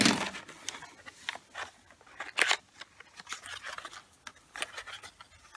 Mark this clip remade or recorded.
recorded